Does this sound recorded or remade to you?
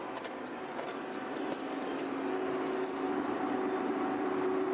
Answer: recorded